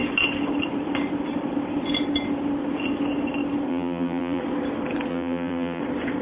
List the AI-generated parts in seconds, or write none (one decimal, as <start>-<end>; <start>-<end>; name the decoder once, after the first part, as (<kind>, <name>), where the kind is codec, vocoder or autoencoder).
3.7-4.4 (vocoder, BigVGAN v2); 5.1-5.8